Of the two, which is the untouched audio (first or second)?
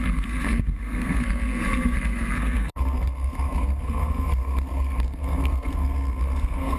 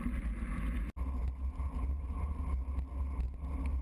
second